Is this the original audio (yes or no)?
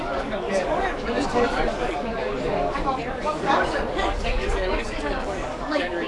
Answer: no